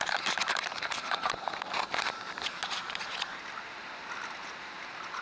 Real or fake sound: fake